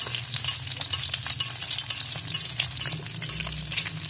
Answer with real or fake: real